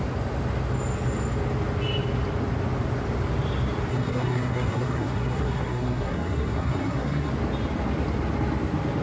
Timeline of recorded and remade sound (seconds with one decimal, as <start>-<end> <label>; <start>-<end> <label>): 0.0-3.9 recorded; 3.9-7.3 remade; 7.3-9.0 recorded

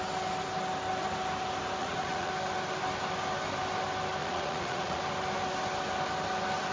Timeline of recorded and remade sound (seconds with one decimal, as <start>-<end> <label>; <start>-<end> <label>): 0.0-1.8 recorded; 1.8-2.3 remade; 2.3-4.2 recorded; 4.2-5.0 remade; 5.0-6.7 recorded

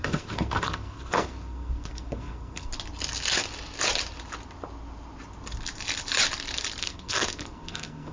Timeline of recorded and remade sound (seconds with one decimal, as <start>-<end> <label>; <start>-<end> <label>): 0.0-2.7 remade; 2.7-6.8 recorded; 6.8-8.1 remade

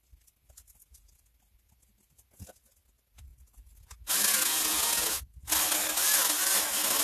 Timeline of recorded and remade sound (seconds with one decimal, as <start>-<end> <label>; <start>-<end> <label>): 0.0-4.5 recorded; 4.5-5.2 remade; 5.2-7.0 recorded

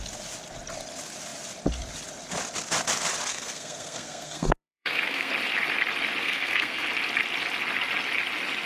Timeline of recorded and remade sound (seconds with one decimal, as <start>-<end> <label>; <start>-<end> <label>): 0.0-3.3 recorded; 3.3-5.3 remade; 5.3-6.2 recorded; 6.2-6.9 remade; 6.9-8.7 recorded

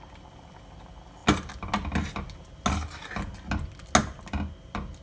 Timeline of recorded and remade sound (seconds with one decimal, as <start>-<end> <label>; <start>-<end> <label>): 0.0-5.0 recorded

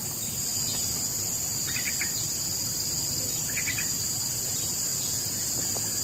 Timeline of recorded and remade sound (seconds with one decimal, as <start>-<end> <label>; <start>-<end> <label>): 0.0-6.0 recorded